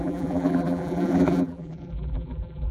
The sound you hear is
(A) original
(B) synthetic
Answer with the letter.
B